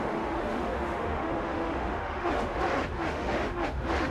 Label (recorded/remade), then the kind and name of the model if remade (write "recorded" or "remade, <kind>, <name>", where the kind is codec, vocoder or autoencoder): remade, autoencoder, DAC-VAE